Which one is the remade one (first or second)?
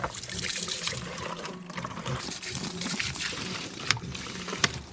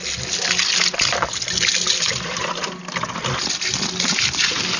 first